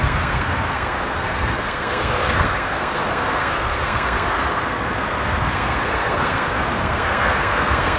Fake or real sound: fake